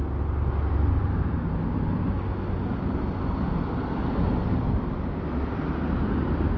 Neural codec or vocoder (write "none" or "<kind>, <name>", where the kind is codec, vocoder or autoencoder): none